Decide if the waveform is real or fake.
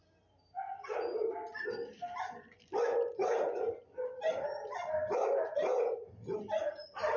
real